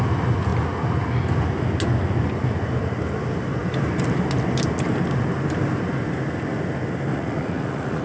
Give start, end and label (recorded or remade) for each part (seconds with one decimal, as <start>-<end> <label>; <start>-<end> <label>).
0.0-7.1 recorded; 7.1-8.0 remade